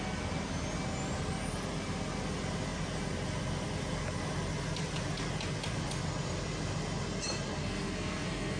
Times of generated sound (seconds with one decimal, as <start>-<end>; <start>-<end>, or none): 7.6-8.6